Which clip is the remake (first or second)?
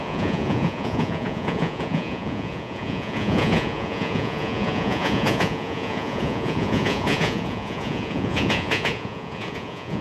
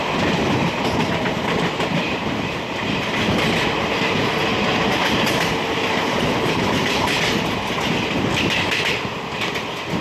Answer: first